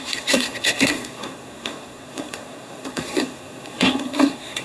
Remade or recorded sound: remade